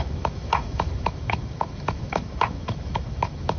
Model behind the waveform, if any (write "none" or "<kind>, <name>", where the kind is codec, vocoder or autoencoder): autoencoder, DAC-VAE